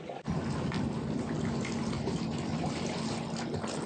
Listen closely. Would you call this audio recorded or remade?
recorded